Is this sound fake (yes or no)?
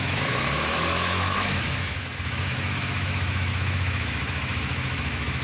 yes